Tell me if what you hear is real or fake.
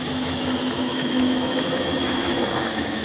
fake